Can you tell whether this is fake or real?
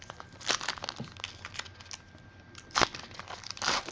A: real